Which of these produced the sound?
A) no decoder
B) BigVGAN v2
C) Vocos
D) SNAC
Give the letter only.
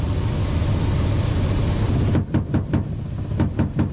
A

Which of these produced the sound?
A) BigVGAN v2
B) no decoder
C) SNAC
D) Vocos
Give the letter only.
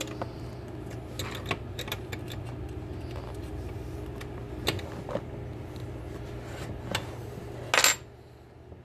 B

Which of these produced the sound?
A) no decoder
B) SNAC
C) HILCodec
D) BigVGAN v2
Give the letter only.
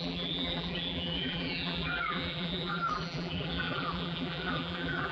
D